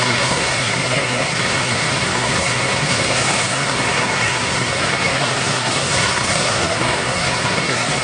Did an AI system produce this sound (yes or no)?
yes